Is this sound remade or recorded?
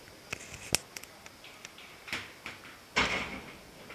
recorded